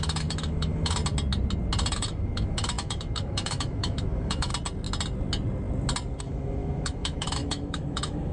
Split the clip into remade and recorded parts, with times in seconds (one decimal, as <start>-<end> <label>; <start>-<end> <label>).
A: 0.0-1.0 remade; 1.0-1.9 recorded; 1.9-4.5 remade; 4.5-6.2 recorded; 6.2-8.3 remade